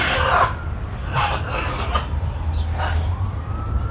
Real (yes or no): yes